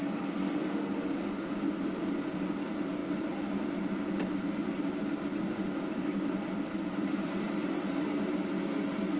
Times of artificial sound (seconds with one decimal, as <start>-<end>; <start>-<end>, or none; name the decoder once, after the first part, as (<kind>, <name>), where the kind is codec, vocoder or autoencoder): none